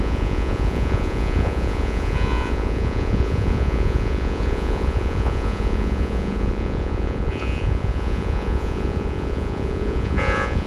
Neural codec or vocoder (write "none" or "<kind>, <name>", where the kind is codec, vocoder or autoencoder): vocoder, Vocos